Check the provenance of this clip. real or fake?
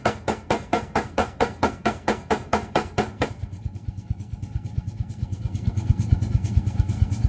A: fake